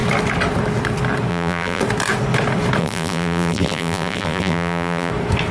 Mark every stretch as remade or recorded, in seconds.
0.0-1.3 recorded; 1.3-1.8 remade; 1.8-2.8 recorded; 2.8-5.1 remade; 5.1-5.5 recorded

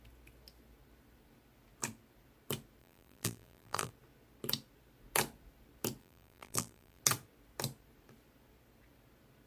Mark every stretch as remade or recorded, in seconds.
0.0-2.8 recorded; 2.8-3.9 remade; 3.9-6.0 recorded; 6.0-7.0 remade; 7.0-9.5 recorded